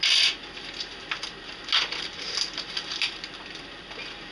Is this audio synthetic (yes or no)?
no